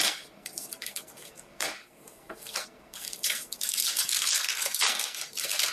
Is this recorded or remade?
remade